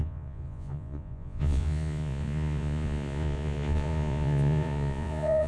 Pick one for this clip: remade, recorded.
remade